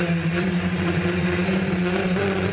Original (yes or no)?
no